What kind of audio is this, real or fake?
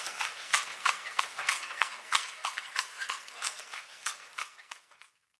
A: fake